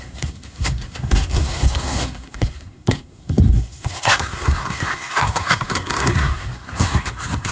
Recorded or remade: remade